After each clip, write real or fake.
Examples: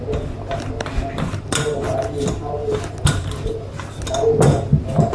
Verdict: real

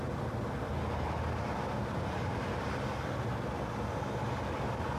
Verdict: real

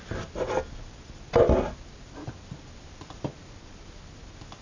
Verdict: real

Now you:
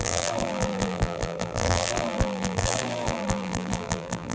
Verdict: fake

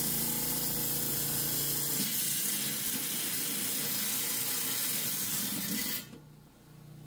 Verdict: real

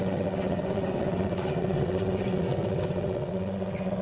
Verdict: fake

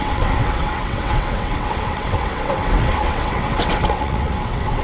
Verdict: fake